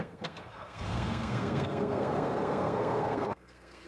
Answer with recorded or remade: remade